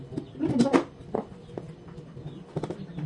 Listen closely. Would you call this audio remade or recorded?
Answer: recorded